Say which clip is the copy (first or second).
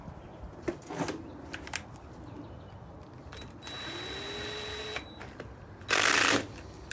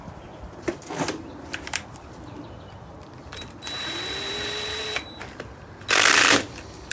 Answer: second